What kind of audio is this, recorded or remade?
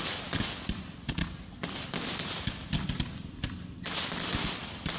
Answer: recorded